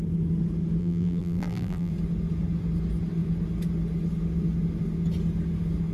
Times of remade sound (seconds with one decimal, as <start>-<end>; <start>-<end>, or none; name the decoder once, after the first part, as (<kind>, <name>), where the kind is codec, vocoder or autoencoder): 0.8-1.9 (vocoder, BigVGAN v2)